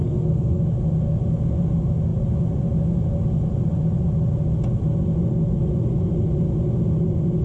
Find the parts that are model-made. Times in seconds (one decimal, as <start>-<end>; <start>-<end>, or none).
0.0-0.6